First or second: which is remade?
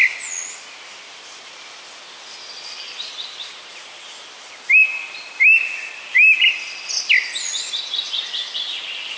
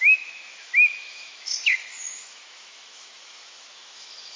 second